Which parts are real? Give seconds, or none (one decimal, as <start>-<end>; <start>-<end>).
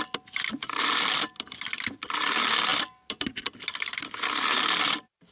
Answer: 0.0-5.3